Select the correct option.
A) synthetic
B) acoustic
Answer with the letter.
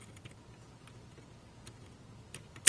B